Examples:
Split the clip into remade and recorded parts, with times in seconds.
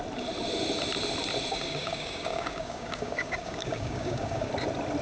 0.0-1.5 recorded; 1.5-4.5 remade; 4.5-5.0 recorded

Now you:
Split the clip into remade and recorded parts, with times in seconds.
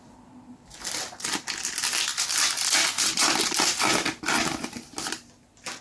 0.0-5.8 recorded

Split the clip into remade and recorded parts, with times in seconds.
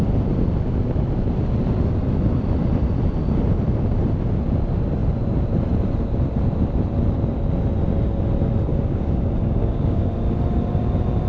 0.0-8.7 recorded; 8.7-10.1 remade; 10.1-11.3 recorded